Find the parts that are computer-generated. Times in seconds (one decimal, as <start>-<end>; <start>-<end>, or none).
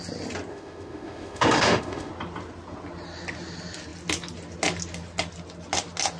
0.5-2.1